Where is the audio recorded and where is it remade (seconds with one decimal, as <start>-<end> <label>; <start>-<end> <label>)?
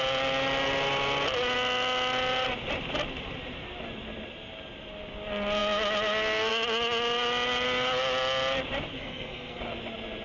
0.0-8.9 recorded; 8.9-9.6 remade; 9.6-10.2 recorded